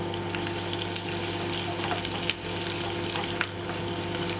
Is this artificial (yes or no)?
no